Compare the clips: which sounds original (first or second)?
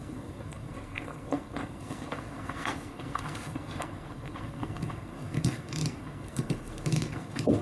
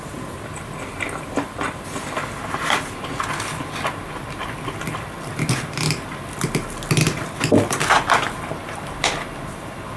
second